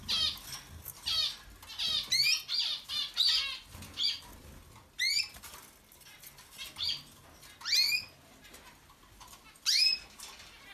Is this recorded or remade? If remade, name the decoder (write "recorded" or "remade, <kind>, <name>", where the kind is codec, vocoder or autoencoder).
recorded